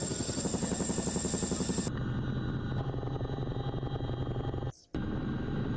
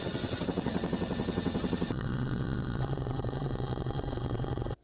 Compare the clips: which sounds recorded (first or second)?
first